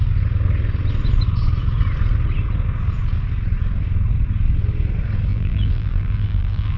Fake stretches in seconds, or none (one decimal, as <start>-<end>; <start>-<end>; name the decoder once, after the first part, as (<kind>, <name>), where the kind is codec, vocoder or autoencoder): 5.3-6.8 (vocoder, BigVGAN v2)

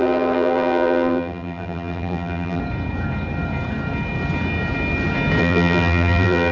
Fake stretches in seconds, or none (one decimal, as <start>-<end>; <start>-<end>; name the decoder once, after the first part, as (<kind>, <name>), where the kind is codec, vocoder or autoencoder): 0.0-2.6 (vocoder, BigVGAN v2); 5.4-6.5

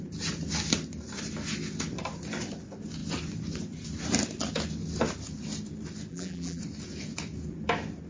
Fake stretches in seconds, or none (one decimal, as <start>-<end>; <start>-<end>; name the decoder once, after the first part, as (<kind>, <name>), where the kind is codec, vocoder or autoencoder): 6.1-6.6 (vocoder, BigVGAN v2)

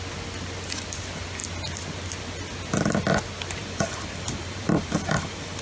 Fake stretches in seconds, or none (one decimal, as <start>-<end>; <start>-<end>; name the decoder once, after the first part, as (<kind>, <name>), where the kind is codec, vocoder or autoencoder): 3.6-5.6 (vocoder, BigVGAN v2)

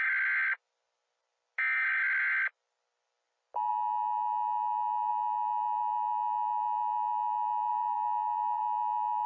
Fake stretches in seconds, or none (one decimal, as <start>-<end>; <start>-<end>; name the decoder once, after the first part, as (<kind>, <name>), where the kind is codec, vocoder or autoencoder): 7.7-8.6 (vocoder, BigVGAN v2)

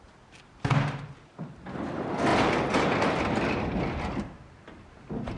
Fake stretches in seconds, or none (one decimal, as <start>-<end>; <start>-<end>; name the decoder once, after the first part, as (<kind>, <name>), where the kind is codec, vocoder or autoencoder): none